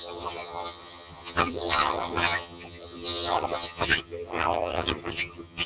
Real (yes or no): no